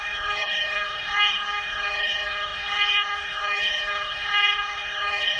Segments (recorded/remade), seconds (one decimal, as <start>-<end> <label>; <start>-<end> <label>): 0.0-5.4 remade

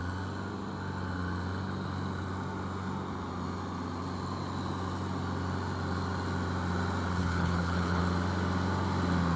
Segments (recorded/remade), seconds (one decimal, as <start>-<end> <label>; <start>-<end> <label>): 0.0-7.2 recorded; 7.2-8.0 remade; 8.0-9.4 recorded

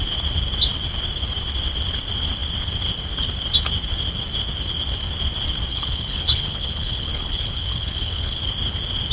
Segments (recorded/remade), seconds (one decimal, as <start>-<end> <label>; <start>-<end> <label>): 0.0-5.7 recorded; 5.7-8.4 remade; 8.4-9.1 recorded

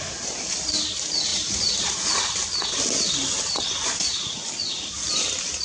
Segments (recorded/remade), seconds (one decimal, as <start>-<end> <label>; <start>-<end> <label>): 0.0-5.6 recorded

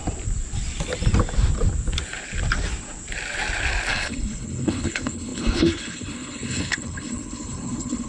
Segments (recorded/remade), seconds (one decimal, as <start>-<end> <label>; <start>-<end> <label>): 0.0-3.9 recorded; 3.9-8.1 remade

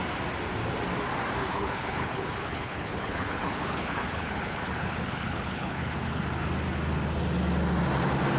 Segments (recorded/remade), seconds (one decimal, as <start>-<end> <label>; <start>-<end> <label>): 0.0-1.4 recorded; 1.4-6.2 remade; 6.2-8.4 recorded